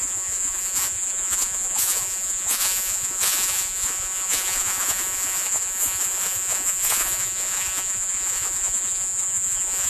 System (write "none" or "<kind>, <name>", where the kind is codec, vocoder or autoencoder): vocoder, Vocos